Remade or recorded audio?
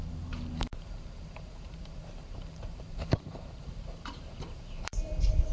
remade